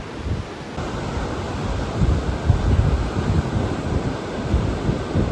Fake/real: real